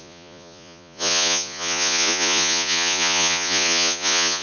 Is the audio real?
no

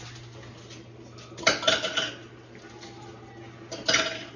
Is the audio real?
yes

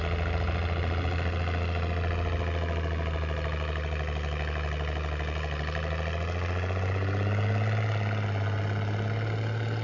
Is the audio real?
yes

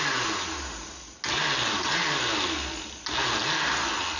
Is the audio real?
yes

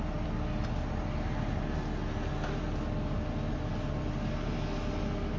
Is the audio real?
yes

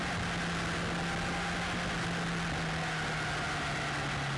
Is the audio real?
yes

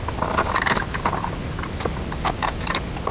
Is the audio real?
yes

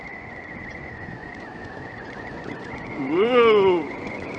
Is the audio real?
no